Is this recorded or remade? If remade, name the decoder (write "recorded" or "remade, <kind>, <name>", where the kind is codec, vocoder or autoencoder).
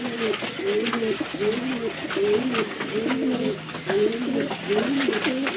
recorded